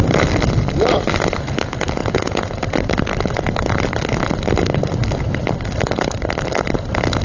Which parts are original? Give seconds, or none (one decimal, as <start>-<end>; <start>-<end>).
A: 0.0-2.0; 2.5-7.2